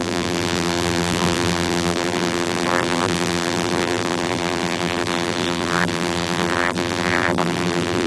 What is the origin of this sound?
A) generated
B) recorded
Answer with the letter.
A